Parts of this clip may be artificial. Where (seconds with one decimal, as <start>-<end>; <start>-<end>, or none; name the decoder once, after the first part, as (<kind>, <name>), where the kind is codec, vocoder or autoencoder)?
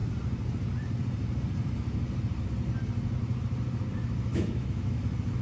4.3-5.0 (autoencoder, DAC-VAE)